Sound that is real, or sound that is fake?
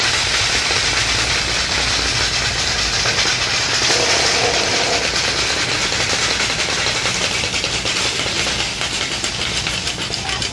real